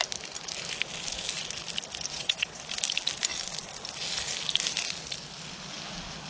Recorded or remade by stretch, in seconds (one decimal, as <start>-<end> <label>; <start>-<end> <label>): 0.0-2.1 recorded; 2.1-2.6 remade; 2.6-6.3 recorded